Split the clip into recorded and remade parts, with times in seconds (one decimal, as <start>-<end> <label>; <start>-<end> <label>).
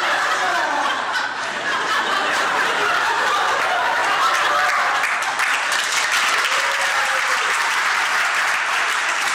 0.0-4.0 remade; 4.0-6.6 recorded; 6.6-9.3 remade